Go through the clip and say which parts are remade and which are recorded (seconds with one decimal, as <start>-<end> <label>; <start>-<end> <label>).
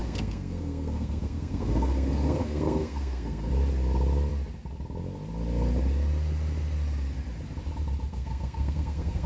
0.0-3.5 remade; 3.5-8.1 recorded; 8.1-9.3 remade